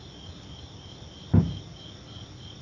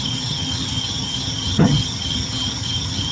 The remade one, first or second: second